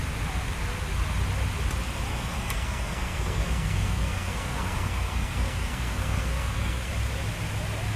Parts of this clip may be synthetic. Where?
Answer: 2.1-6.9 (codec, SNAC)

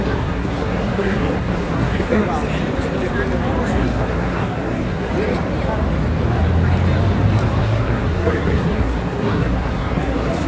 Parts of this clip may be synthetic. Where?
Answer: 0.0-2.2 (codec, SNAC); 3.7-5.1; 7.6-10.5

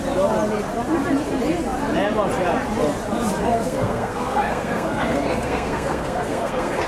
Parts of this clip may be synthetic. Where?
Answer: 3.4-6.9 (codec, SNAC)